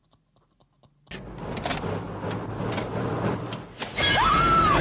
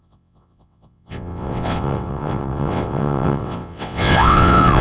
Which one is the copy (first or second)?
second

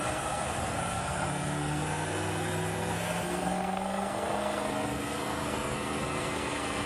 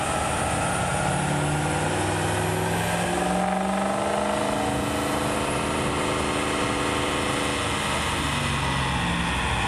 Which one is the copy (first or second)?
first